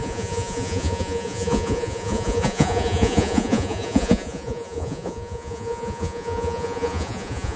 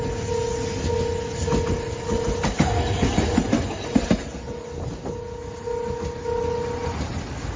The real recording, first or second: second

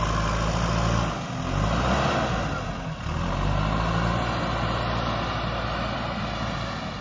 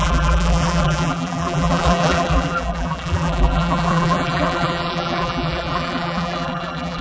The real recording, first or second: first